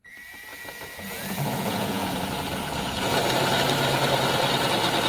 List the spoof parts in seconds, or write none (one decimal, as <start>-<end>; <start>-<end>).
0.0-2.0; 2.8-3.2